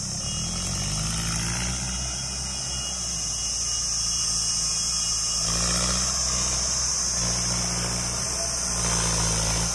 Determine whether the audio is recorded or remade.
recorded